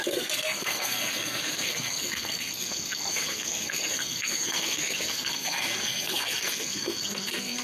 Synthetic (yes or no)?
yes